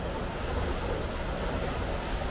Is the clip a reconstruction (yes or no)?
yes